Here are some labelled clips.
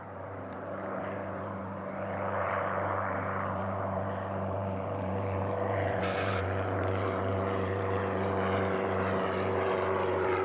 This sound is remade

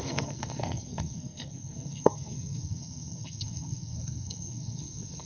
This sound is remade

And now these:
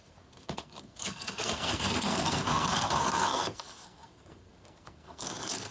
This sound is remade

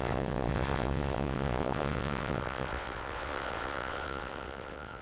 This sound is remade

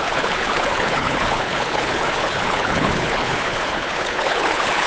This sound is remade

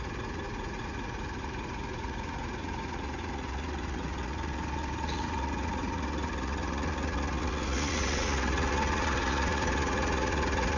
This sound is remade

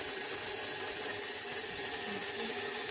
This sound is recorded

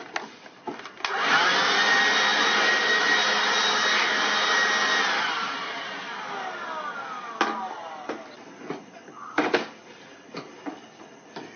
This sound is recorded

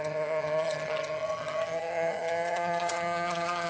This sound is remade